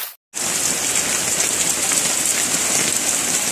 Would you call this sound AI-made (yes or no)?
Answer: no